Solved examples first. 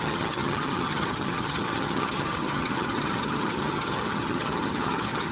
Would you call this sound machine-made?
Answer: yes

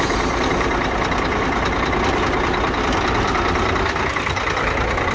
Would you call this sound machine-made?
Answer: no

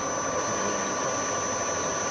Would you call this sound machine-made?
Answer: no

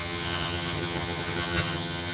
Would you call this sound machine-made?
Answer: yes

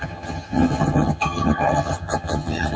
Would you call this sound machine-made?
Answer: yes